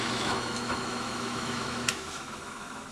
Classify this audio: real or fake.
fake